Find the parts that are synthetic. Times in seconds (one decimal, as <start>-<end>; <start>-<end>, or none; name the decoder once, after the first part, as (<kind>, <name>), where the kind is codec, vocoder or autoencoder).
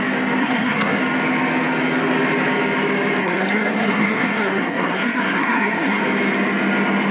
0.4-1.0 (codec, SNAC); 3.2-6.0